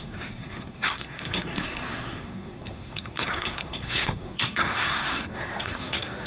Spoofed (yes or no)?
yes